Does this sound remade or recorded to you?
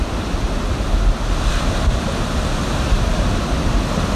recorded